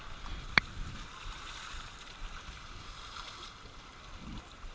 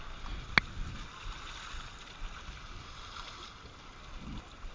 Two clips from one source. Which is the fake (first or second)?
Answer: first